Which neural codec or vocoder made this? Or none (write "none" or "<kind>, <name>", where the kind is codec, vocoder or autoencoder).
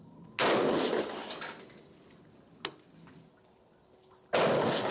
none